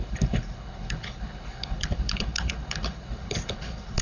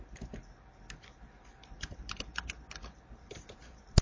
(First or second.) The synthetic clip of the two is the first